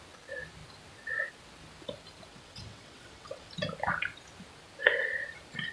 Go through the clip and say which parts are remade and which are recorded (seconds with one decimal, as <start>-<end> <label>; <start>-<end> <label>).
0.0-2.3 recorded; 2.3-3.5 remade; 3.5-5.7 recorded